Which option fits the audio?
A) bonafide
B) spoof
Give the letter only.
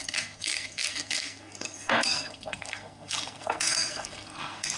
B